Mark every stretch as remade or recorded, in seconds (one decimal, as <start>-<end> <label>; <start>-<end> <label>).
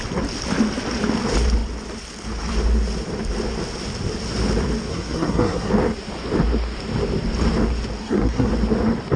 0.0-4.9 recorded; 4.9-5.7 remade; 5.7-8.0 recorded; 8.0-8.5 remade; 8.5-9.2 recorded